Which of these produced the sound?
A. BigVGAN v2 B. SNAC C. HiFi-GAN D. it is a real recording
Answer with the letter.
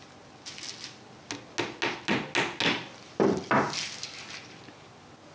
D